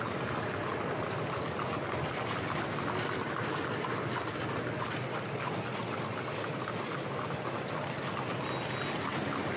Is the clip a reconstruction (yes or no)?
no